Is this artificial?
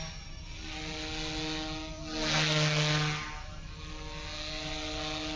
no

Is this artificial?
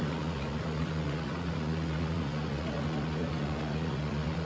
yes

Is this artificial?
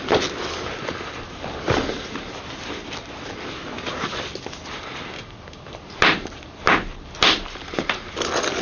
no